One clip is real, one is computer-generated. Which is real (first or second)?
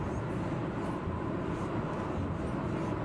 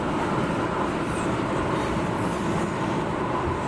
first